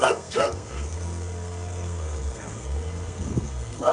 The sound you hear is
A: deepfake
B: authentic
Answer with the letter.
A